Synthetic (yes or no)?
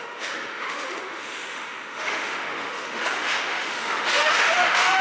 yes